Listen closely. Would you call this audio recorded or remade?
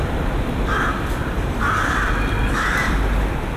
remade